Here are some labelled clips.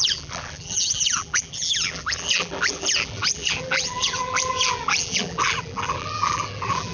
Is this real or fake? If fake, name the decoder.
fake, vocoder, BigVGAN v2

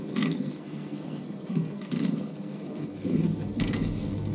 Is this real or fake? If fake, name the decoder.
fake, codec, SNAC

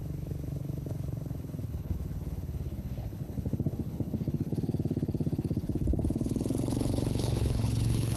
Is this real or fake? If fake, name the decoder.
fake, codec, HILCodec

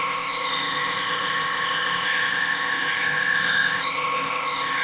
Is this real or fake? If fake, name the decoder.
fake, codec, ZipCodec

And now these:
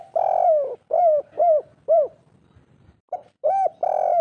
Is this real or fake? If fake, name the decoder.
real